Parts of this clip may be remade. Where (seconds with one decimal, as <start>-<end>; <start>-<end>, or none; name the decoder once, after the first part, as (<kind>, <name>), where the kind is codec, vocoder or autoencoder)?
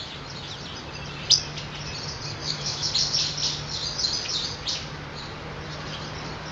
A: 2.4-2.9 (autoencoder, DAC-VAE)